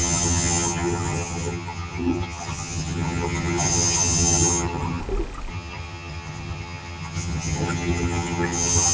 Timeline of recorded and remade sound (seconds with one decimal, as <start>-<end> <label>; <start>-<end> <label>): 0.0-5.0 remade; 5.0-5.5 recorded; 5.5-8.9 remade